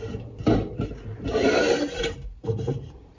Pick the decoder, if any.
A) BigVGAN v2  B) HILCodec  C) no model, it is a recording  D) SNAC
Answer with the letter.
A